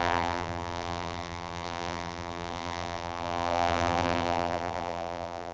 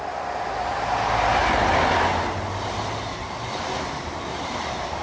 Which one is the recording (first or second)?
second